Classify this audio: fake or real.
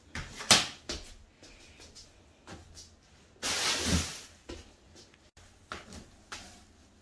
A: real